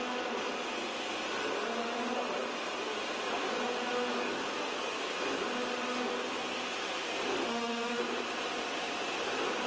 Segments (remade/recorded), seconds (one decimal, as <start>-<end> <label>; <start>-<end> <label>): 0.0-7.3 recorded; 7.3-8.0 remade; 8.0-9.7 recorded